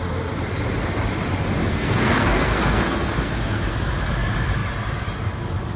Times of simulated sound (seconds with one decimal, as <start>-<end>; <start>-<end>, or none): 1.6-3.9